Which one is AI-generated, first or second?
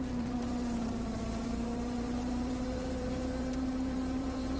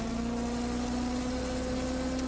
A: first